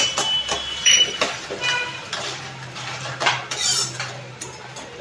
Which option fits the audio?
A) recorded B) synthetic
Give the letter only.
B